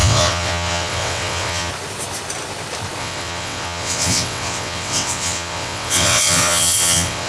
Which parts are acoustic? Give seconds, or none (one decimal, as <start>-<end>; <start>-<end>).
1.7-3.0